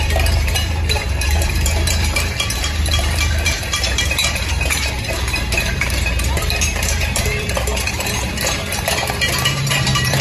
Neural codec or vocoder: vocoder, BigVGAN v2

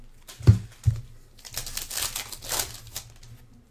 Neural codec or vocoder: none